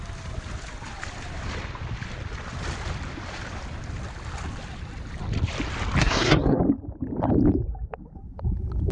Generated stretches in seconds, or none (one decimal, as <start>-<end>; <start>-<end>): 6.0-6.6